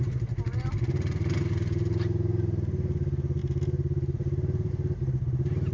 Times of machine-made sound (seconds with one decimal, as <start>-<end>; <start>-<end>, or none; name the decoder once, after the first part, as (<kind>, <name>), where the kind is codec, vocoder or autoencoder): 3.4-4.7 (vocoder, BigVGAN v2)